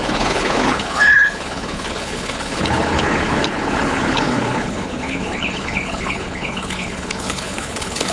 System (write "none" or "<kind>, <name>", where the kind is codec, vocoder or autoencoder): codec, HILCodec